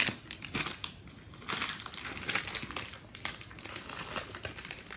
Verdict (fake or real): real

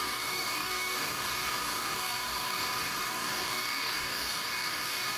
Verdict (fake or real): fake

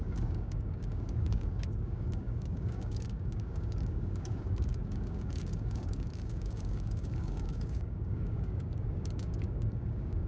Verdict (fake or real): fake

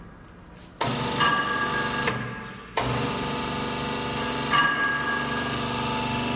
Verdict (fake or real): real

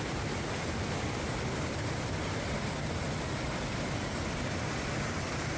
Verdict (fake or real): real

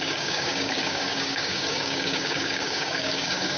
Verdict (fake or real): fake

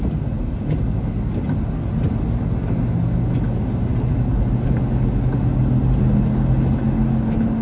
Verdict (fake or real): real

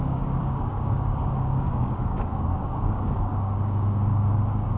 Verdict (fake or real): fake